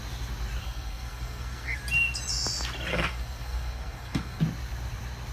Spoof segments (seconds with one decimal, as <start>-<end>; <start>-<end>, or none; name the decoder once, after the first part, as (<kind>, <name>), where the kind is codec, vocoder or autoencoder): 0.6-1.8 (codec, SNAC); 2.9-4.4